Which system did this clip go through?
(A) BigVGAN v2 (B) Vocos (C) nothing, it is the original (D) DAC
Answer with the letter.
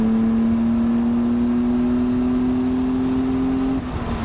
C